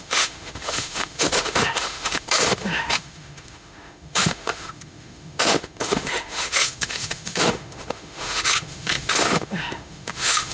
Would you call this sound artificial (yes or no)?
yes